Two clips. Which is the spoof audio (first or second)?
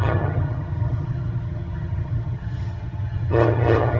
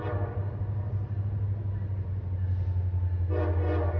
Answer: first